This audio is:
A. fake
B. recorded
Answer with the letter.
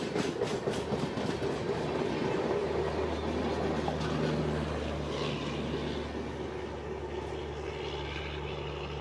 B